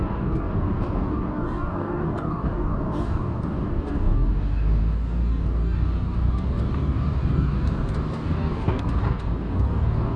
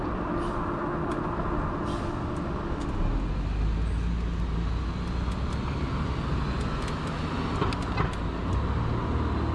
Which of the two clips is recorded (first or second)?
second